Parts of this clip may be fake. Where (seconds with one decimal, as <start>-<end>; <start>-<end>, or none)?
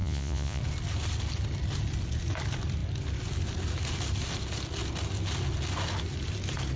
0.0-0.6